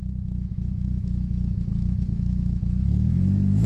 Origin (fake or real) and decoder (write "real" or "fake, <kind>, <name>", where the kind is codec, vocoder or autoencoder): fake, autoencoder, DAC-VAE